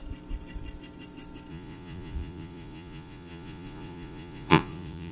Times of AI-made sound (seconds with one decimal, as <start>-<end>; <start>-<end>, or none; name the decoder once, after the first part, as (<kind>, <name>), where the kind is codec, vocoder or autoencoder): 1.5-5.1 (vocoder, Vocos)

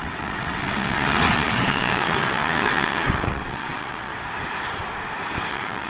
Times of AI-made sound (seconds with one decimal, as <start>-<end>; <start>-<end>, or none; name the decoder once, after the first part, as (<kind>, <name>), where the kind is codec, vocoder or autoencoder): 0.0-4.1 (vocoder, WaveNeXt); 5.5-5.9

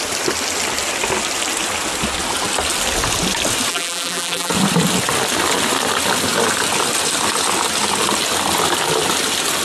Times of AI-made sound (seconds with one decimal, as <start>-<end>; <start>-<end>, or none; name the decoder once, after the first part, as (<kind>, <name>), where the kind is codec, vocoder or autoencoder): 3.7-4.5 (vocoder, BigVGAN v2)

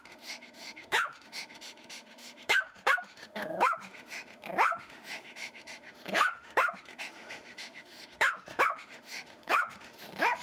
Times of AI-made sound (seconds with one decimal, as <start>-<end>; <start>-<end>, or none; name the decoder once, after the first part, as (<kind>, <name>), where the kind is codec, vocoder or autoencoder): 0.0-10.4 (autoencoder, DAC-VAE)